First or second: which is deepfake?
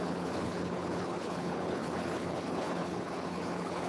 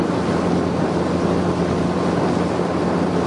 first